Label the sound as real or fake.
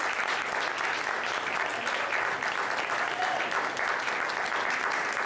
real